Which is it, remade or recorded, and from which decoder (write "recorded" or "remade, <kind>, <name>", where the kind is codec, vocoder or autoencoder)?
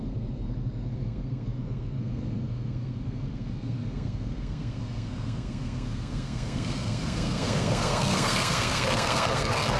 remade, codec, SNAC